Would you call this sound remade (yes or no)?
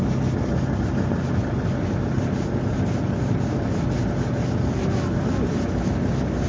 no